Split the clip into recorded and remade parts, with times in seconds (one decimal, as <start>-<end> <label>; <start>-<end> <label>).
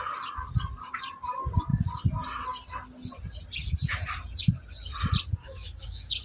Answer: 0.0-5.4 recorded; 5.4-6.2 remade